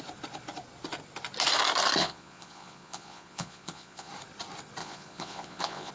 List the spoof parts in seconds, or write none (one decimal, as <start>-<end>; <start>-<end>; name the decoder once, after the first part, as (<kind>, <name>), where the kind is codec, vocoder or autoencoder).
2.0-4.1 (vocoder, Vocos); 4.8-5.9

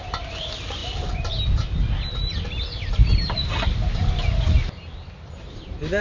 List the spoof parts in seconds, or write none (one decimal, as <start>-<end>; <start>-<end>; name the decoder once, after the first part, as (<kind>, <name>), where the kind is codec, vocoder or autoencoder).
none

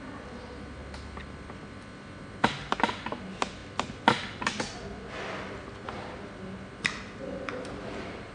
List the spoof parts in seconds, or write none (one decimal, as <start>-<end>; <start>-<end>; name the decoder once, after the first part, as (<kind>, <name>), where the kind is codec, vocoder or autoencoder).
none

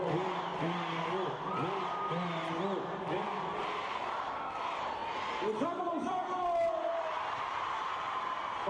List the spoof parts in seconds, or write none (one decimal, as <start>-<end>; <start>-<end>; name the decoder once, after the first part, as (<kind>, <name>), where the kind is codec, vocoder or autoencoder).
none

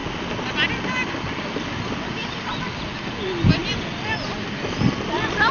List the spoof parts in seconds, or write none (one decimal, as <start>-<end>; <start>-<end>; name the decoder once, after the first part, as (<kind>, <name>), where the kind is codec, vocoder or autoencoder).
none